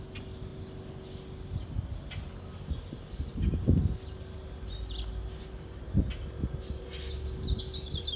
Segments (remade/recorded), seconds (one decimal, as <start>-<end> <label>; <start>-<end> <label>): 0.0-8.2 recorded